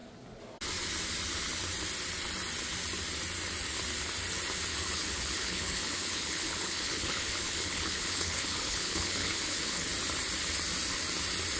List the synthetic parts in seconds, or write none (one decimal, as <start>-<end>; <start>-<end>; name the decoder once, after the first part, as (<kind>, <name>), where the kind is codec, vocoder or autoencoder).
4.7-9.9 (codec, HILCodec)